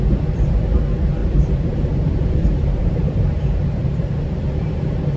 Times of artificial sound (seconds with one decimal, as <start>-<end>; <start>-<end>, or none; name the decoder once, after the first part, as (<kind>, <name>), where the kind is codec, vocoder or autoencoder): 1.2-4.2 (vocoder, BigVGAN v2)